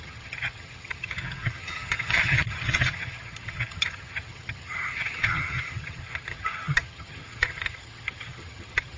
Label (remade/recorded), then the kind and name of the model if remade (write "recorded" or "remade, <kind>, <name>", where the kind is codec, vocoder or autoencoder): remade, vocoder, HiFi-GAN